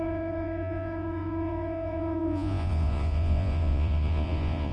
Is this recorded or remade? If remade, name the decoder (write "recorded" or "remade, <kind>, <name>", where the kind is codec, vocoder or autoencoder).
remade, vocoder, Vocos